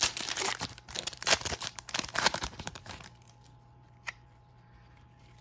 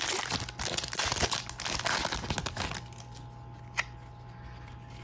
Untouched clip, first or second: second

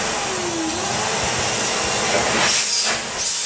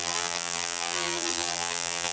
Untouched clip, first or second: first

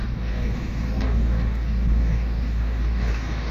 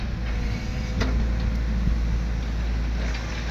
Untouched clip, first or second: second